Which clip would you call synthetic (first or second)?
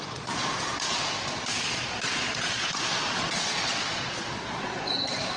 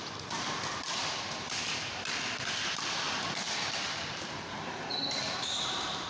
first